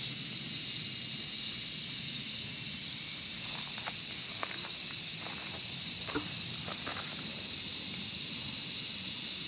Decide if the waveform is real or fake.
real